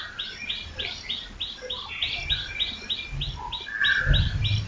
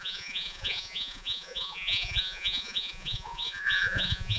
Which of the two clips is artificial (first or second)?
second